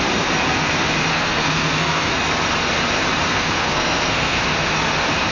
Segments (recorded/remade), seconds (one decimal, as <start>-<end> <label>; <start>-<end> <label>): 0.0-1.1 recorded; 1.1-2.1 remade; 2.1-3.3 recorded; 3.3-4.4 remade; 4.4-5.3 recorded